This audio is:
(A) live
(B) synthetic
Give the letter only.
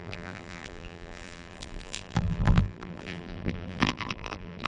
B